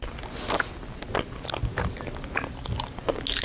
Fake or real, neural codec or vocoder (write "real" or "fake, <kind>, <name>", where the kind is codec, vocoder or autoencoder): real